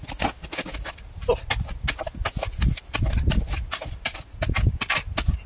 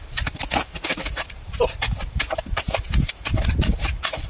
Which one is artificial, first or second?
second